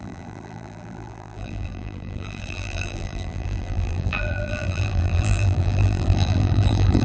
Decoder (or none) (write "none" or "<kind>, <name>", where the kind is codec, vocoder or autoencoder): vocoder, BigVGAN v2